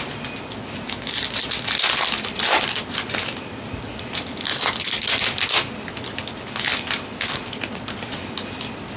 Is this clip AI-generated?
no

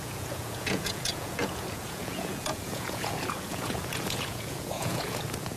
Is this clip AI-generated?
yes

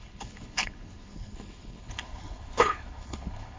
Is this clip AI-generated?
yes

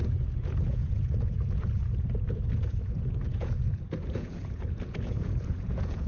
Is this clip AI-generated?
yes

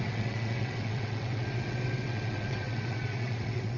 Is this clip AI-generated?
yes